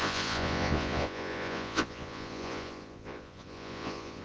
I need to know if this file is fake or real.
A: fake